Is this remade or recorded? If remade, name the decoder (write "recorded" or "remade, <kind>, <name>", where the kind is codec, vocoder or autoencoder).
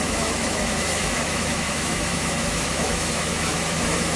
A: remade, autoencoder, DAC-VAE